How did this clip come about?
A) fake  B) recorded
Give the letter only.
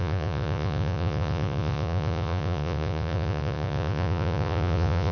A